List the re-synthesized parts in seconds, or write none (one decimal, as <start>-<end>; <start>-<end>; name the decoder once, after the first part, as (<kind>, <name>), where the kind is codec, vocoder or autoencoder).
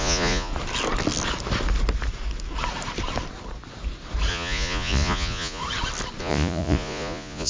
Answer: 0.0-0.5 (vocoder, Vocos); 4.3-5.6; 6.2-7.5